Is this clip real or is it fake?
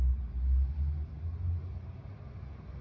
real